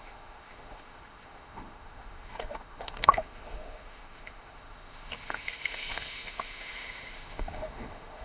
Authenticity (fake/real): fake